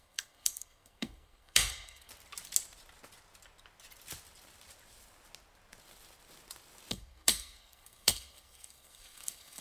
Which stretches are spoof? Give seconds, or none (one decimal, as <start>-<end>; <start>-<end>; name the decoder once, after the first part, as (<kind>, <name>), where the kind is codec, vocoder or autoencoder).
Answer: 0.0-2.1 (codec, SNAC); 6.9-9.6